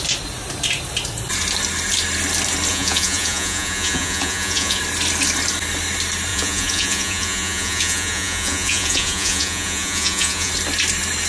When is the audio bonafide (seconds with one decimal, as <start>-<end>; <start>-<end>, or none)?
0.0-2.7; 4.8-6.3; 10.5-11.3